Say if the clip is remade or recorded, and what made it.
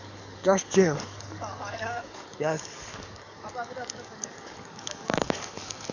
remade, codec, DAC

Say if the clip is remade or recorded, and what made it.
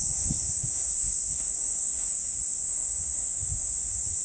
remade, autoencoder, DAC-VAE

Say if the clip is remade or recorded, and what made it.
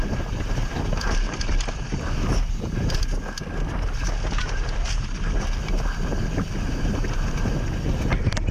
recorded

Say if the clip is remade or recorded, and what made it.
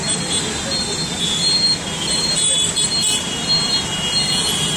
recorded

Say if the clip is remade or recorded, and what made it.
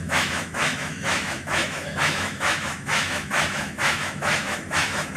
remade, autoencoder, DAC-VAE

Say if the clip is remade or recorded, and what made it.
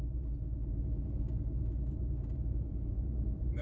remade, vocoder, BigVGAN v2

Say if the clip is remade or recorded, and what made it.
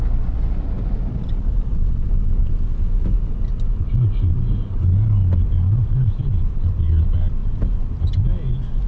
recorded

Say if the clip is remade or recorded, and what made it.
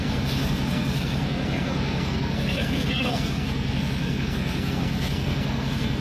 remade, codec, SNAC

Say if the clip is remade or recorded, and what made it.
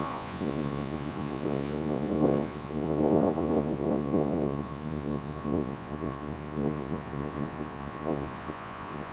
remade, vocoder, Vocos